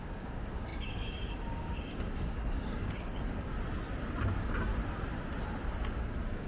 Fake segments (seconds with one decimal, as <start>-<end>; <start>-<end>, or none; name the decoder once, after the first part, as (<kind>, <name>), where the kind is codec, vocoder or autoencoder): 0.0-3.5 (codec, DAC); 4.3-4.7; 6.0-6.5